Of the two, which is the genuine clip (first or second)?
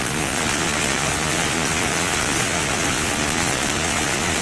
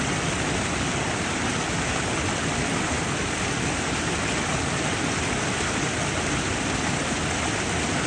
second